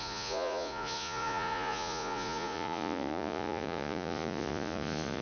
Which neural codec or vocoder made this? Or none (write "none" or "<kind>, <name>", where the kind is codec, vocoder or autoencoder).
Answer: vocoder, Vocos